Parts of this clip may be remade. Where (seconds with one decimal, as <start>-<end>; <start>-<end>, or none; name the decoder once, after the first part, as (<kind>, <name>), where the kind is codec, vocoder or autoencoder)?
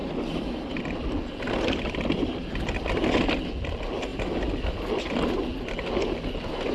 none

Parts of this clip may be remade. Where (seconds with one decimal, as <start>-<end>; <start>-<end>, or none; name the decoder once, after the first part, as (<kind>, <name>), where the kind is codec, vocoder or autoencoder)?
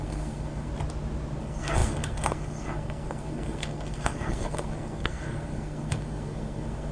0.0-0.7 (codec, SNAC); 1.4-6.9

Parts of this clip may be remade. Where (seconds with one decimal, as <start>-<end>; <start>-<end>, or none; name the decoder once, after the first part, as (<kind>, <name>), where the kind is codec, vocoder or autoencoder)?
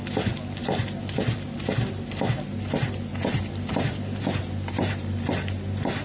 none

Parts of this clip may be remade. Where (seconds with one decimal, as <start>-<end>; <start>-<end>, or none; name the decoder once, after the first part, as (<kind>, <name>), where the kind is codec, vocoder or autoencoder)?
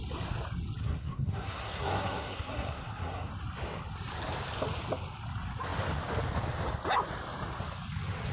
0.8-3.3 (codec, SNAC)